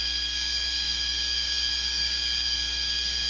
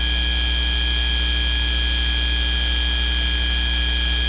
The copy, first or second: first